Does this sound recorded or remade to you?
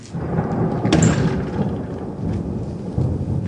recorded